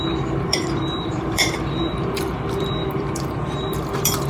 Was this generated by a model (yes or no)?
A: yes